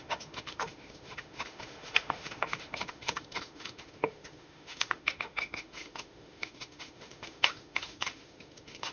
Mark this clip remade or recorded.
remade